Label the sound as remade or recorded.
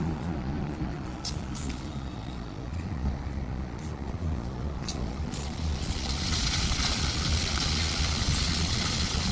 remade